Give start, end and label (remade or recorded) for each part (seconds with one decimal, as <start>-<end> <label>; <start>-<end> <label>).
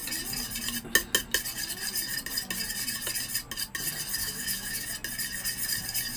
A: 0.0-4.2 recorded; 4.2-4.9 remade; 4.9-6.2 recorded